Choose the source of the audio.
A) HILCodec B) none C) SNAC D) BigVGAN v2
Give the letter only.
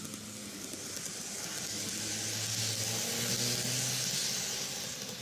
B